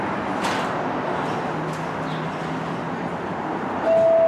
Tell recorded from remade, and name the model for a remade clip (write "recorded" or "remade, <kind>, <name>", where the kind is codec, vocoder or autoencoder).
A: recorded